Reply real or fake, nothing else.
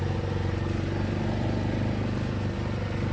real